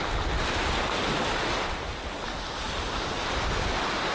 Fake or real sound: real